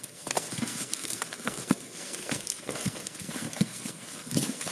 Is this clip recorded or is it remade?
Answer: remade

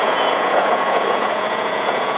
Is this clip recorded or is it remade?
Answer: remade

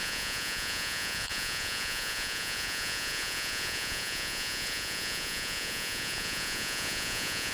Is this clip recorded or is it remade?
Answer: remade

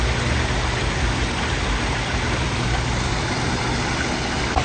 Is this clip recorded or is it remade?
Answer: recorded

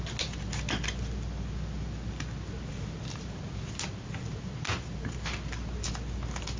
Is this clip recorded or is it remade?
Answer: recorded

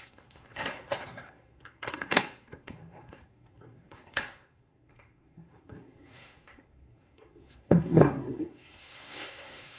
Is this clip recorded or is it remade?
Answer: remade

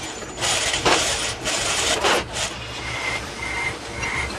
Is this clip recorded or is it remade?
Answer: remade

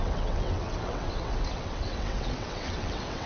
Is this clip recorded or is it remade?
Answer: remade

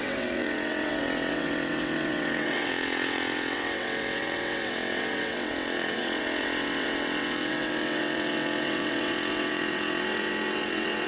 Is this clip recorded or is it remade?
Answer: remade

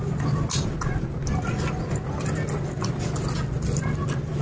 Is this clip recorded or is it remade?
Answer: recorded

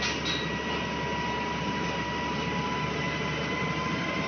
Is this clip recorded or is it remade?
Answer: recorded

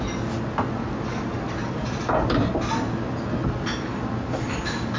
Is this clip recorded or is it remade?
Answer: recorded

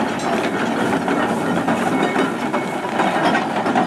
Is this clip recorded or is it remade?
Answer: recorded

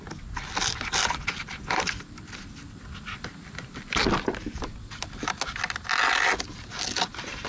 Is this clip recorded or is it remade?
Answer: recorded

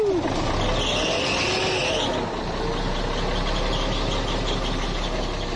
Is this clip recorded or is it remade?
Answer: recorded